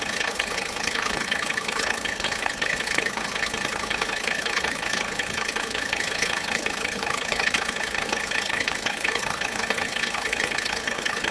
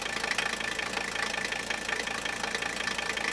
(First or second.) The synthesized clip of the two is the first